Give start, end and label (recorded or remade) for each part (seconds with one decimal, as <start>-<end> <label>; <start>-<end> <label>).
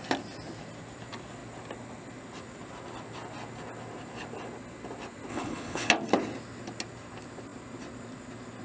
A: 0.0-5.3 recorded; 5.3-5.9 remade; 5.9-8.6 recorded